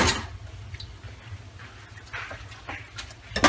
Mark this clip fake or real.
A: real